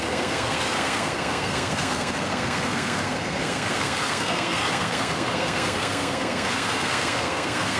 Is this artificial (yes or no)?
yes